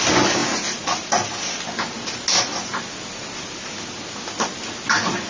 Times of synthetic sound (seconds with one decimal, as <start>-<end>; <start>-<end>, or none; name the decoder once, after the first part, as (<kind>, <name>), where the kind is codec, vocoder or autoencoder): none